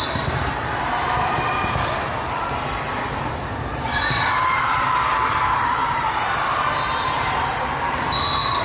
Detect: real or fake fake